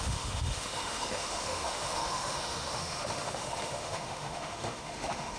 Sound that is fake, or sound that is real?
fake